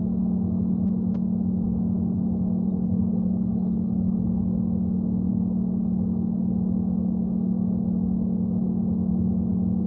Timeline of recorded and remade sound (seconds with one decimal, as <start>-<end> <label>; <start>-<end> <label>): 0.0-2.7 recorded; 2.7-4.3 remade; 4.3-9.9 recorded